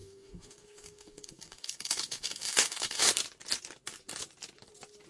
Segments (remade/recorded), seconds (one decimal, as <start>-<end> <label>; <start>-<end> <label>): 0.0-3.1 remade; 3.1-5.1 recorded